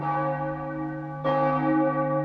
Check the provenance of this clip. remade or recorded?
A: recorded